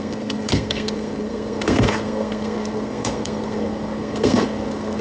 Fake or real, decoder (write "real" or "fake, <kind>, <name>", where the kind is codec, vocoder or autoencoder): fake, codec, SNAC